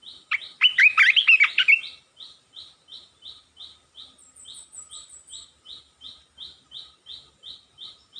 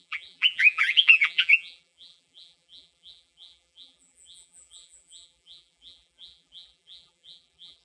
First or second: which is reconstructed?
second